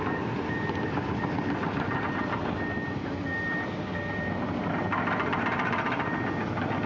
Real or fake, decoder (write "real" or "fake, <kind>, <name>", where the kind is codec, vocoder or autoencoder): real